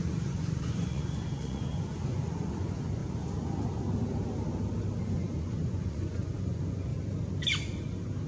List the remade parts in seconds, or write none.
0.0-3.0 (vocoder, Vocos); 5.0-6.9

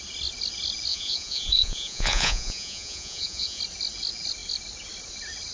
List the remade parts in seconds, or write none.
0.9-3.6 (vocoder, Vocos)

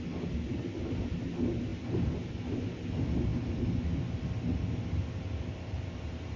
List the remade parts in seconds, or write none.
none

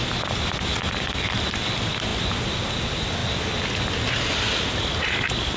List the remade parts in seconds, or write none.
none

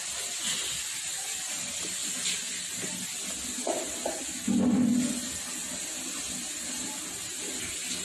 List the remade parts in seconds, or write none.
none

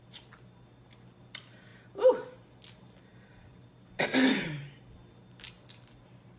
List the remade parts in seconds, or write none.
none

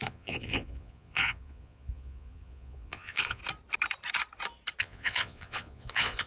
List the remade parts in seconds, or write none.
0.0-3.4 (vocoder, Vocos); 4.8-6.3